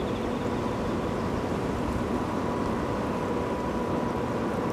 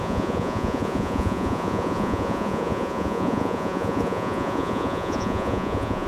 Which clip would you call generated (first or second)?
second